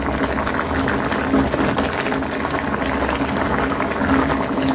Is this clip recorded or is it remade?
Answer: recorded